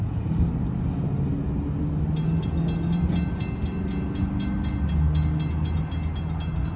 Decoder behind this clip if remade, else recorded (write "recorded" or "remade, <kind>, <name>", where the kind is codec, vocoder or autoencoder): recorded